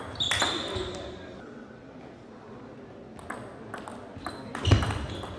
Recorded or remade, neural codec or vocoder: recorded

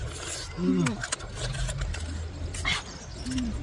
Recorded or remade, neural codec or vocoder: recorded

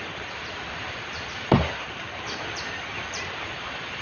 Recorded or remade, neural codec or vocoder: remade, vocoder, BigVGAN v2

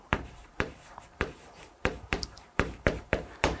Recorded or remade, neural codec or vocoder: remade, vocoder, BigVGAN v2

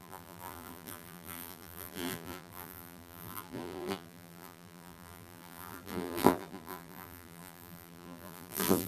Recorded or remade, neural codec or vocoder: remade, vocoder, BigVGAN v2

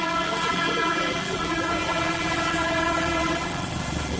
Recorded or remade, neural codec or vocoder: remade, vocoder, BigVGAN v2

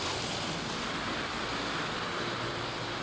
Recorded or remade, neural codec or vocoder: recorded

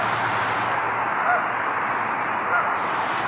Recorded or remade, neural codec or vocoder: recorded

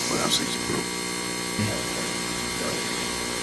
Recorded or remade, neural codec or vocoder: recorded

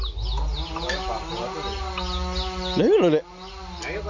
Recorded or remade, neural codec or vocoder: recorded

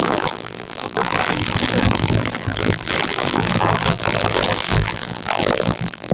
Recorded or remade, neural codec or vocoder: remade, vocoder, BigVGAN v2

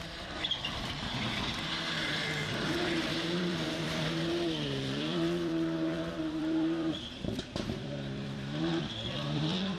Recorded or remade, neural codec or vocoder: remade, vocoder, BigVGAN v2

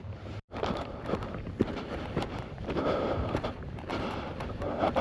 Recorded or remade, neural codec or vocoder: remade, vocoder, BigVGAN v2